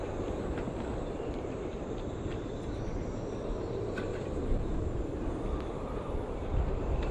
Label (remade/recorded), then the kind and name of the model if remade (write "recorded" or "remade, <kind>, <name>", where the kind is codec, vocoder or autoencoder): recorded